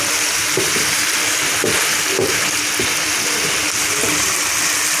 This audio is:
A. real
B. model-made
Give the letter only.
A